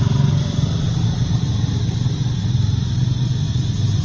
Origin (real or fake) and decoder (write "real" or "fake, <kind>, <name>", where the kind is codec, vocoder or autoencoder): real